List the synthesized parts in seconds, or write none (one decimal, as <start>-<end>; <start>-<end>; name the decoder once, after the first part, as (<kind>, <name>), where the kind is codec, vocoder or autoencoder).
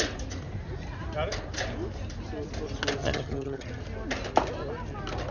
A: 3.0-3.8 (vocoder, HiFi-GAN)